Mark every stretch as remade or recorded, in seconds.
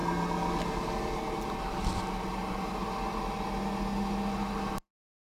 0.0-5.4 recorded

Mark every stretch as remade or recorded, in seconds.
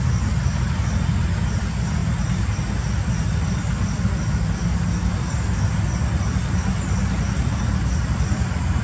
0.0-2.0 recorded; 2.0-2.6 remade; 2.6-8.8 recorded